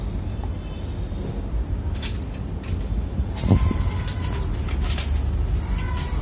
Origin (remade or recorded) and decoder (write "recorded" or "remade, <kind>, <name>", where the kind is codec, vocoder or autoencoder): recorded